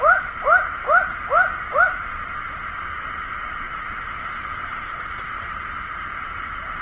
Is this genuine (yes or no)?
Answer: no